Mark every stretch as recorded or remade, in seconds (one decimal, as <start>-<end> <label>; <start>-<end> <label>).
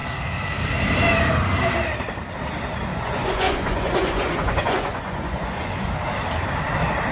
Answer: 0.0-2.9 recorded; 2.9-5.9 remade; 5.9-7.1 recorded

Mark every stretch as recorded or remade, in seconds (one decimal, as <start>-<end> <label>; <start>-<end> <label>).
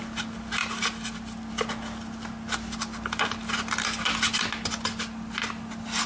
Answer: 0.0-6.1 recorded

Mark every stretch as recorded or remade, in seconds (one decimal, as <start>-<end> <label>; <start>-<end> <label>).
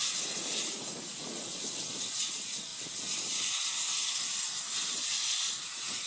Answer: 0.0-1.5 remade; 1.5-2.1 recorded; 2.1-2.7 remade; 2.7-5.5 recorded; 5.5-6.1 remade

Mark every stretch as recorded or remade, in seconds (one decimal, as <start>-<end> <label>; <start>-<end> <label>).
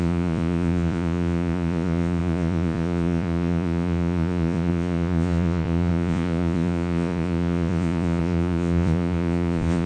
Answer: 0.0-9.9 remade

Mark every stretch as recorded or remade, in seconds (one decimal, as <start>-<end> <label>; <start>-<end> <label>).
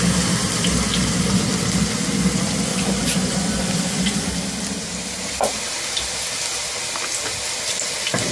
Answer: 0.0-2.7 recorded; 2.7-4.2 remade; 4.2-8.3 recorded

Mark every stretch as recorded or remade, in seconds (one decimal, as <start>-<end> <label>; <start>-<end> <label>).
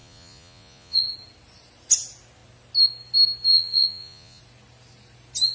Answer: 0.0-1.0 remade; 1.0-3.5 recorded; 3.5-4.4 remade; 4.4-5.5 recorded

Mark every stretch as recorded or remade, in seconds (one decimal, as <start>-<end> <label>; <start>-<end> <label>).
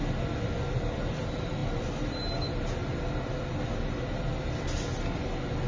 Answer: 0.0-5.7 recorded